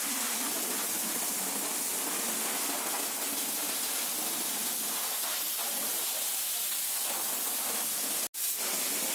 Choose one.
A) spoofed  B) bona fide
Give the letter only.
B